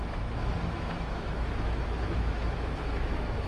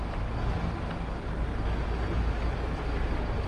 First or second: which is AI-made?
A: first